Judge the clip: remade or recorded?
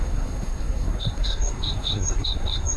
remade